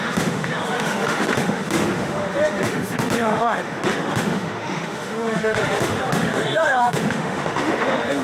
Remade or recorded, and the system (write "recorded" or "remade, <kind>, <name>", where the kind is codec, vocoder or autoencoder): remade, autoencoder, DAC-VAE